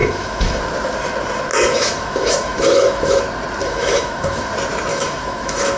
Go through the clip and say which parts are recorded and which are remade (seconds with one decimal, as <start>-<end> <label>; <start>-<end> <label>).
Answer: 0.0-0.6 remade; 0.6-1.5 recorded; 1.5-3.2 remade; 3.2-3.6 recorded; 3.6-4.5 remade; 4.5-4.9 recorded; 4.9-5.8 remade